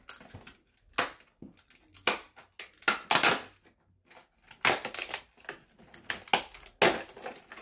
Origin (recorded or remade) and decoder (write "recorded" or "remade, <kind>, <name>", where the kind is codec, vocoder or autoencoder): recorded